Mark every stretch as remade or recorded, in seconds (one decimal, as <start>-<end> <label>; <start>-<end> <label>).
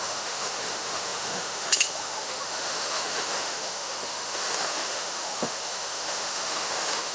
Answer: 0.0-7.1 remade